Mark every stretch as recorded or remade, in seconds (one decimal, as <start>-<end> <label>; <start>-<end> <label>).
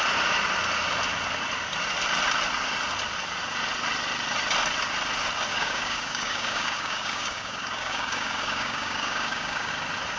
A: 0.0-5.5 recorded; 5.5-9.7 remade; 9.7-10.2 recorded